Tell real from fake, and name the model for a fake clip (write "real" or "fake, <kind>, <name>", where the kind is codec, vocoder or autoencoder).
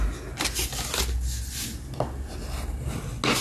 real